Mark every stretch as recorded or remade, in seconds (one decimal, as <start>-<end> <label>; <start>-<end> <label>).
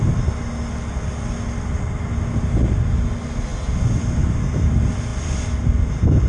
0.0-6.3 recorded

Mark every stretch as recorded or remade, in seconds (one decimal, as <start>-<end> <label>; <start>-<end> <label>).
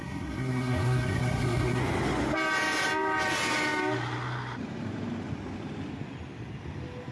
0.0-1.8 remade; 1.8-7.1 recorded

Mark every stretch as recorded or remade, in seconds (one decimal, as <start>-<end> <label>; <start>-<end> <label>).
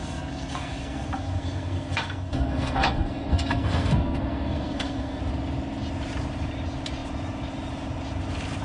0.0-5.2 remade; 5.2-8.6 recorded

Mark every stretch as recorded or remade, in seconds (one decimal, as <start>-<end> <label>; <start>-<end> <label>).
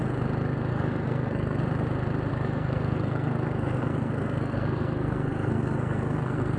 0.0-0.7 recorded; 0.7-1.6 remade; 1.6-2.3 recorded; 2.3-6.6 remade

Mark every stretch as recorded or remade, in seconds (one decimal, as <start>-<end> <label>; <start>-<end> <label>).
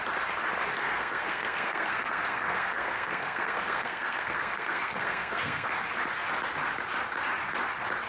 0.0-0.8 recorded; 0.8-5.7 remade; 5.7-8.1 recorded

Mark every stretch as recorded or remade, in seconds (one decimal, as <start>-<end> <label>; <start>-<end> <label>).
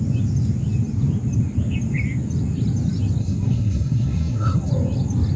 0.0-3.2 recorded; 3.2-4.7 remade; 4.7-5.4 recorded